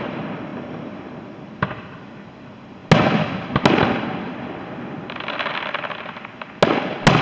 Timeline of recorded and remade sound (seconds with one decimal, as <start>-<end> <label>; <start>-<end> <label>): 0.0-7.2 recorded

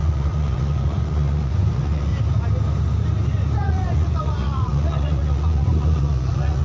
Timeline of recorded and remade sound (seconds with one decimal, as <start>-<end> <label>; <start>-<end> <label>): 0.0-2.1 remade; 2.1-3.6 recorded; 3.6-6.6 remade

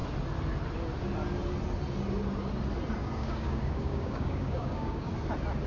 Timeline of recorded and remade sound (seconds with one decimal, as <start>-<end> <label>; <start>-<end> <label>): 0.0-3.0 recorded; 3.0-5.1 remade; 5.1-5.7 recorded

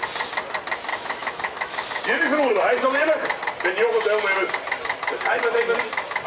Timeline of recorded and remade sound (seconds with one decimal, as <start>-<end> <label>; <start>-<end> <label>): 0.0-0.9 recorded; 0.9-2.0 remade; 2.0-6.3 recorded

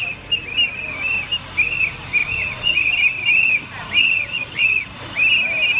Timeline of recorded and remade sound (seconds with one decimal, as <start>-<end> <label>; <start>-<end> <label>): 0.0-2.2 recorded; 2.2-2.9 remade; 2.9-4.0 recorded; 4.0-4.8 remade; 4.8-5.8 recorded

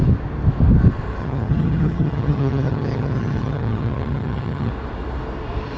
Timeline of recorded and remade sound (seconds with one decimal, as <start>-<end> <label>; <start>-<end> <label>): 0.0-1.2 recorded; 1.2-4.7 remade; 4.7-5.8 recorded